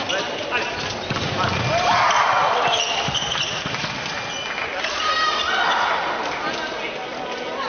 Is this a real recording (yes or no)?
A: yes